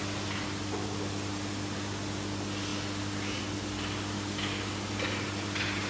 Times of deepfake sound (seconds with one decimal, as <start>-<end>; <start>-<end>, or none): none